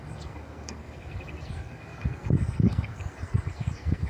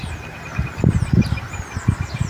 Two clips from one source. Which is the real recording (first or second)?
second